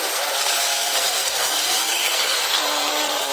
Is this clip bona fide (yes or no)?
no